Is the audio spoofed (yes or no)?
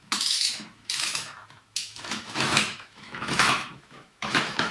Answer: yes